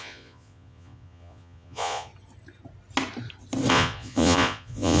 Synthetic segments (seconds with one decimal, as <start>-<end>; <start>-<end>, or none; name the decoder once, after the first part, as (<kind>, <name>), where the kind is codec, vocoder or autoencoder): 0.0-2.1 (vocoder, Vocos); 3.7-5.0